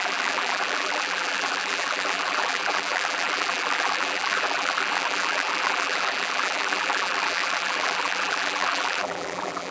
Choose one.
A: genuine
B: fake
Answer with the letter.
B